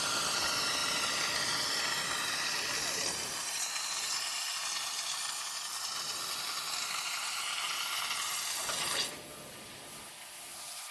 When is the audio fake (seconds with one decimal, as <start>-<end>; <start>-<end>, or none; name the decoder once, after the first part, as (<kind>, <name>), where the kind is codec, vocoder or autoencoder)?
none